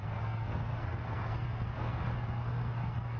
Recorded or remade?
remade